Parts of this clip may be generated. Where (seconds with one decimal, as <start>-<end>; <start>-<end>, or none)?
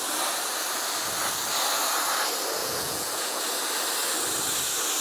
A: 2.6-3.4